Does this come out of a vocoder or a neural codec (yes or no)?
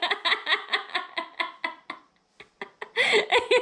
no